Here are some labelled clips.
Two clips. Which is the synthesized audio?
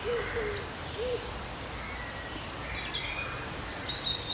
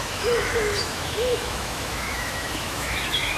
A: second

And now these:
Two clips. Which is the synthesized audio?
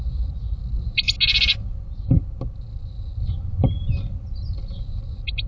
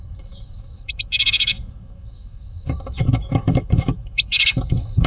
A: second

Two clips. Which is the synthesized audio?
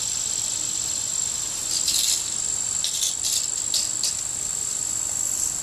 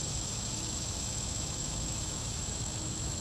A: second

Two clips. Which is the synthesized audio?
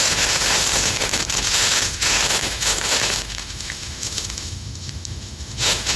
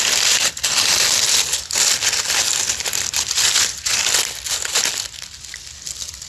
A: first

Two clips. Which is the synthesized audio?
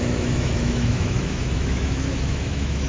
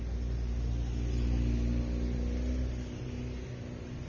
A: first